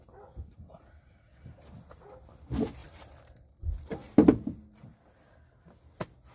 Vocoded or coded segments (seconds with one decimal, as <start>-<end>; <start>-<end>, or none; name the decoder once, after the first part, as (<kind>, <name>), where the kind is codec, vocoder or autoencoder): 2.8-5.1 (vocoder, BigVGAN v2)